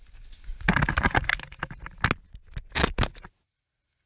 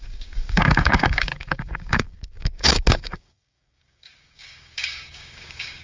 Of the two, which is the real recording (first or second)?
first